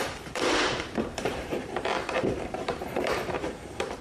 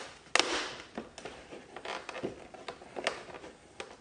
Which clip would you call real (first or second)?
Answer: second